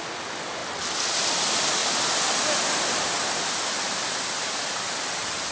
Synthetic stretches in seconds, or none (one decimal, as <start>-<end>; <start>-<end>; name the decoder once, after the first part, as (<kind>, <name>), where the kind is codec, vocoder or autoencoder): none